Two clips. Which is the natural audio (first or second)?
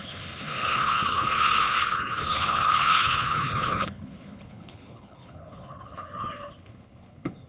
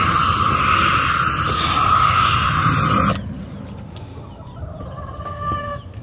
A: second